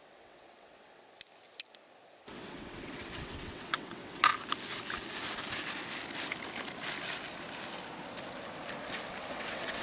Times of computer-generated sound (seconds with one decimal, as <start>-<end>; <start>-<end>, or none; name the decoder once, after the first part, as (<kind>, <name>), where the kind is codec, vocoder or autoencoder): 0.0-1.0 (vocoder, WaveNeXt); 2.3-4.3; 9.3-9.8